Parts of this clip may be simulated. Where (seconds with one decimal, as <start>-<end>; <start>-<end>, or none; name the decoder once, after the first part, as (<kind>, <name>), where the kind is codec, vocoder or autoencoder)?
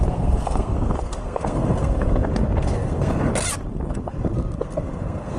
0.0-3.3 (codec, SNAC); 3.9-5.4